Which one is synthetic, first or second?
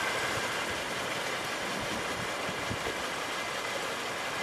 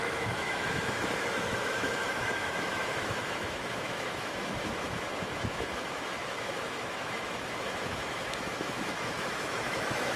second